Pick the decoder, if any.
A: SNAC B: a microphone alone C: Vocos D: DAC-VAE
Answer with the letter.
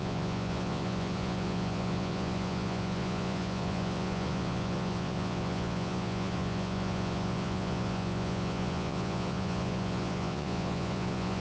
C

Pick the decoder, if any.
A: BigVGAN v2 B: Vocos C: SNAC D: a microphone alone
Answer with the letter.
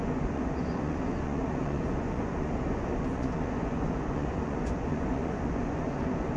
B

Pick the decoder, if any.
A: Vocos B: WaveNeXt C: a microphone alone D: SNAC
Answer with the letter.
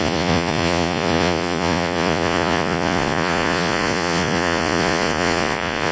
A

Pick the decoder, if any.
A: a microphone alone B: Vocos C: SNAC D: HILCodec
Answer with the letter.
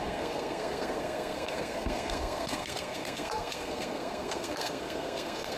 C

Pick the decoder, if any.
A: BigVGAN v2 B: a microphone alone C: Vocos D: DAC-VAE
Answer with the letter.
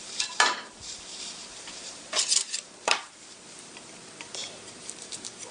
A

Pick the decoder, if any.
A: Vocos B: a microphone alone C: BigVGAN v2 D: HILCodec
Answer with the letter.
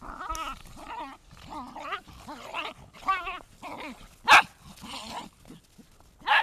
B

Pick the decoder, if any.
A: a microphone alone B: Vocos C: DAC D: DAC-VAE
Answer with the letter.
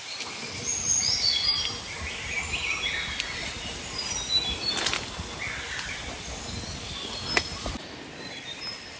A